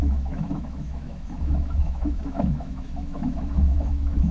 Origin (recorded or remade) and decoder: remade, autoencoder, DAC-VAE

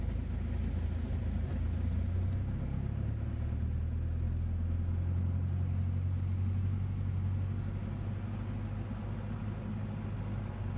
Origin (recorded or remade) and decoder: recorded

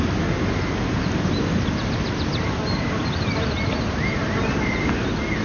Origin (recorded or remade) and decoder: recorded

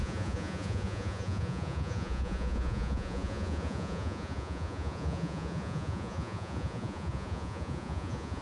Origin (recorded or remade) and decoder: remade, vocoder, Vocos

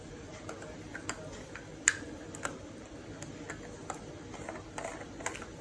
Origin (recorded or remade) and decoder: recorded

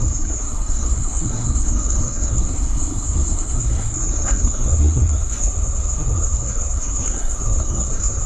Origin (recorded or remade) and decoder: remade, codec, SNAC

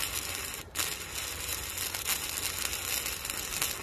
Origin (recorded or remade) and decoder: recorded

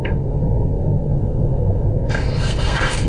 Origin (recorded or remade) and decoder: remade, codec, SNAC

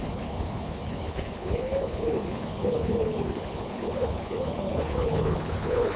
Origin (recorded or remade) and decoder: remade, codec, HILCodec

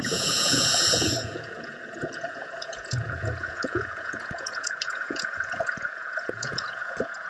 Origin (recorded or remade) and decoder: remade, vocoder, Vocos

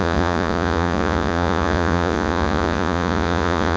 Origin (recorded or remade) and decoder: remade, vocoder, Vocos